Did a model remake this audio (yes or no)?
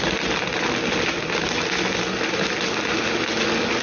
no